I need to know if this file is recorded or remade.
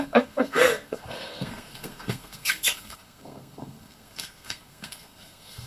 remade